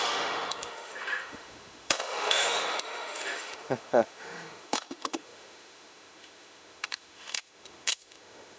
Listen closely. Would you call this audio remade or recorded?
remade